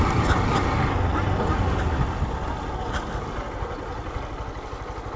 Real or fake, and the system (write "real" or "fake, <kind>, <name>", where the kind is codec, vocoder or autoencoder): real